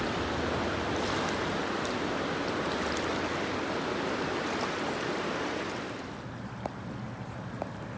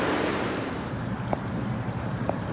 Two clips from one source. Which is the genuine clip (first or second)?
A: first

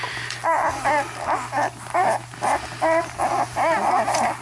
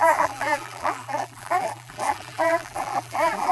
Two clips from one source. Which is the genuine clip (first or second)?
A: first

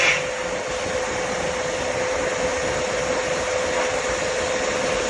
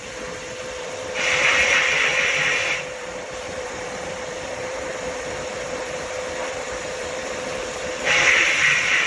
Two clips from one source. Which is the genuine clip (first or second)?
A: first